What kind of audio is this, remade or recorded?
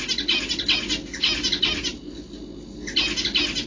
recorded